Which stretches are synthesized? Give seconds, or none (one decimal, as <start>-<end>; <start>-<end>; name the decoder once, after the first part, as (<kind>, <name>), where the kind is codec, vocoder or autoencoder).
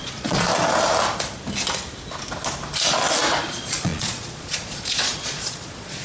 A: 0.0-0.5 (vocoder, Vocos); 3.4-6.0